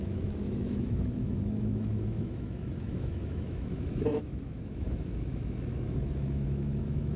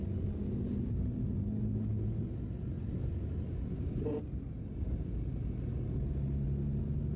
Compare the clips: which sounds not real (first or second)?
first